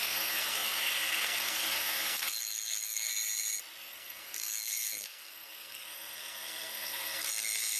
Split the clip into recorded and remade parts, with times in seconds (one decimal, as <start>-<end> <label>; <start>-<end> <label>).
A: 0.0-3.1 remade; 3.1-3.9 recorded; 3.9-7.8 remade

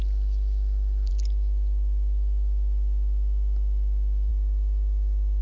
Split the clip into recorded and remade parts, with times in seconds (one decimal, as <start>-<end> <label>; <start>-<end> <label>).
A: 0.0-5.4 recorded

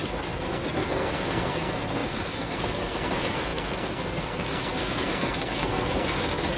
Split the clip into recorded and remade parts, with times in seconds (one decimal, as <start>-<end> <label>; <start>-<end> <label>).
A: 0.0-6.6 remade

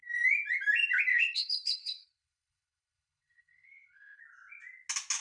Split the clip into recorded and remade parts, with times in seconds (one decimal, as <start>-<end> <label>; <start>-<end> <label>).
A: 0.0-1.1 recorded; 1.1-4.2 remade; 4.2-5.2 recorded

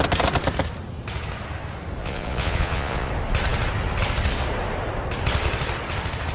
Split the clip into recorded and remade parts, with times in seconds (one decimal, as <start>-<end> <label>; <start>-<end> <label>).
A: 0.0-2.0 recorded; 2.0-3.1 remade; 3.1-6.3 recorded